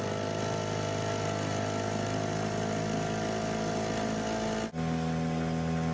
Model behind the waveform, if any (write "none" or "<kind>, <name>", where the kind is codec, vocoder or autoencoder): none